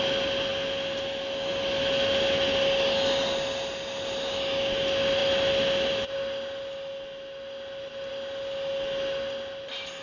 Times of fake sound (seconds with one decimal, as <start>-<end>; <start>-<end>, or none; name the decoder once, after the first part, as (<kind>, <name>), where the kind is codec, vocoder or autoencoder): none

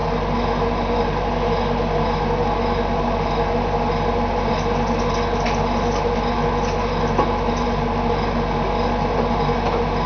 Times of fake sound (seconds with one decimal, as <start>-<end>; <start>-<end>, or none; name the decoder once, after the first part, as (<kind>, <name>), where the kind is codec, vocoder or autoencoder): none

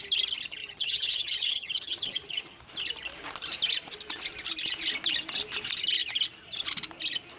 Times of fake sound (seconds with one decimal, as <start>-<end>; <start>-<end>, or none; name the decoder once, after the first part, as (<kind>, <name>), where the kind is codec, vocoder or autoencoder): 0.6-2.6 (vocoder, HiFi-GAN)

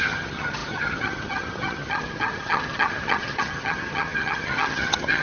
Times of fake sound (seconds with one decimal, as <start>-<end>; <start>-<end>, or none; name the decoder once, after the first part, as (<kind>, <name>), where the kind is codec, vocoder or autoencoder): 0.0-5.2 (vocoder, HiFi-GAN)